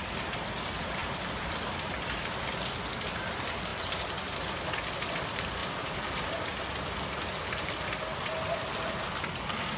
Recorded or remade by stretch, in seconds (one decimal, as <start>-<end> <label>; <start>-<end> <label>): 0.0-1.0 recorded; 1.0-1.5 remade; 1.5-8.1 recorded; 8.1-8.9 remade; 8.9-9.8 recorded